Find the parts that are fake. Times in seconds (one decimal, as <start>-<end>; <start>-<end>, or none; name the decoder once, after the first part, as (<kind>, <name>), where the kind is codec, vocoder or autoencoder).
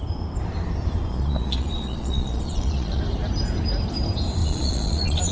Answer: 1.1-3.0 (vocoder, Vocos); 4.4-5.3